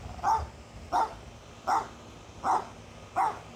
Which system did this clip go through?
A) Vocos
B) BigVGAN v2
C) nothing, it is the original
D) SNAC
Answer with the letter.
C